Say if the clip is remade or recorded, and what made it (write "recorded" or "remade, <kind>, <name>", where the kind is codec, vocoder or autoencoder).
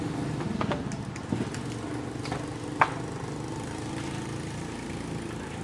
recorded